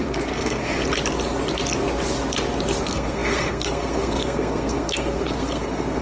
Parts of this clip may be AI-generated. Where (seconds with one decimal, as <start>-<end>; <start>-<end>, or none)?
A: 0.0-0.8; 2.8-6.0